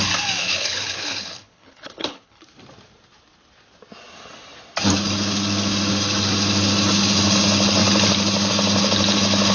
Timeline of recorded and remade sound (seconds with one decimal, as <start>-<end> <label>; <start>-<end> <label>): 0.0-0.4 recorded; 0.4-2.4 remade; 2.4-9.5 recorded